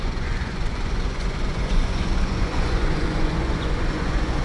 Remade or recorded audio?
remade